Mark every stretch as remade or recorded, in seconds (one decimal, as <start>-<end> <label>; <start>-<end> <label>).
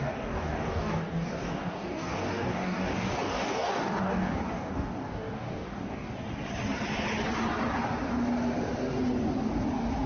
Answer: 0.0-6.1 remade; 6.1-10.1 recorded